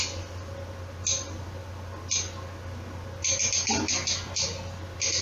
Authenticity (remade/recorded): recorded